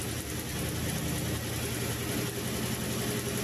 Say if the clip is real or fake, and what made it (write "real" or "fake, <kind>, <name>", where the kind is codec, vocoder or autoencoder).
real